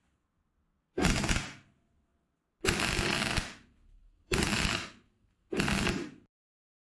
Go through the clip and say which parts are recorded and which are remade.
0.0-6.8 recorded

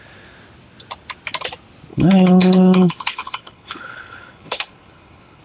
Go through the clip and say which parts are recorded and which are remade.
0.0-1.9 recorded; 1.9-5.4 remade

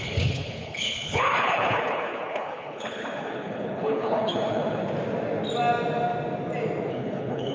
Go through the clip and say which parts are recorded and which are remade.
0.0-4.8 remade; 4.8-6.9 recorded; 6.9-7.5 remade

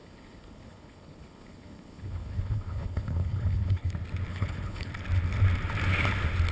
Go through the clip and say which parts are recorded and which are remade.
0.0-3.9 remade; 3.9-4.3 recorded; 4.3-4.9 remade; 4.9-6.5 recorded

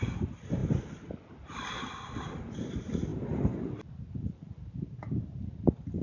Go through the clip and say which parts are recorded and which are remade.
0.0-6.0 recorded

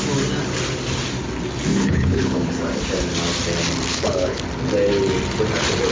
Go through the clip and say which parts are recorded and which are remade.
0.0-1.7 recorded; 1.7-2.5 remade; 2.5-3.9 recorded; 3.9-4.4 remade; 4.4-5.9 recorded